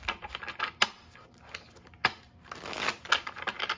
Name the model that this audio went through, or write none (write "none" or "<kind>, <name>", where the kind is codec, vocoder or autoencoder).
none